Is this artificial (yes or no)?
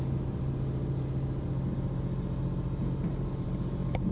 no